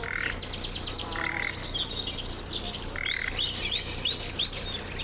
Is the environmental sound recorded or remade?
recorded